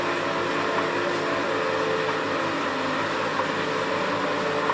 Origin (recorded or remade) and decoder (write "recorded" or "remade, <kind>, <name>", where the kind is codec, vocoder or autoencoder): recorded